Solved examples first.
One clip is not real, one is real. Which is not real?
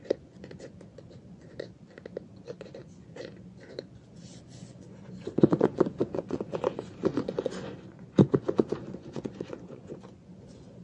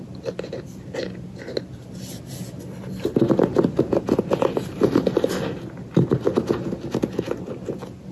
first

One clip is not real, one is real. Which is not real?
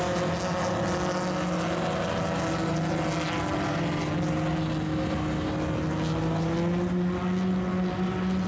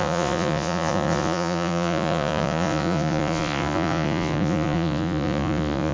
second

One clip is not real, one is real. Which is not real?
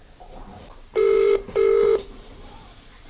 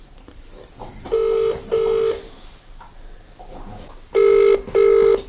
first